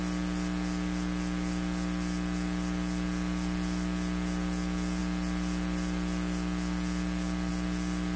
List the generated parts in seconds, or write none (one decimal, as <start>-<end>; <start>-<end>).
none

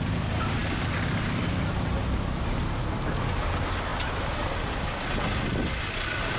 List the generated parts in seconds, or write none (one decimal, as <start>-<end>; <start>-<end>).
none

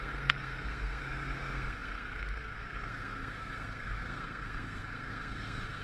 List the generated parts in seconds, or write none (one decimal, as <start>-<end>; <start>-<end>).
0.0-5.8

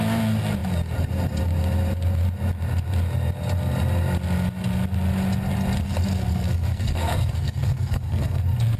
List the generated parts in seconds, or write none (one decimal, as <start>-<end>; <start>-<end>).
6.3-8.4

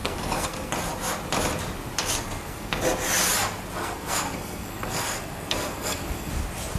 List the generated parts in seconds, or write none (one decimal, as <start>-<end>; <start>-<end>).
0.0-0.7; 2.0-2.8; 3.8-6.3

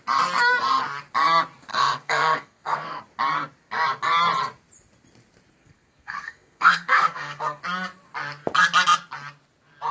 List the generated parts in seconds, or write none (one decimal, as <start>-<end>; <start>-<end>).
1.7-3.0; 5.6-7.6

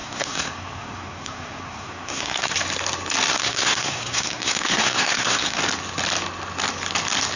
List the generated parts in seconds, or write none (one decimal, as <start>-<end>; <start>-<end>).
0.0-2.5; 3.3-5.6